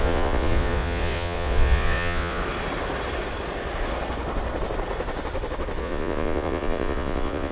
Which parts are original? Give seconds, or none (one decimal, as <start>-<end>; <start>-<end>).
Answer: 2.4-5.8